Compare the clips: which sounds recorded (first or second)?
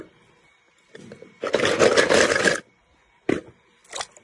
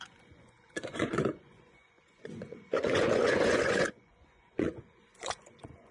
first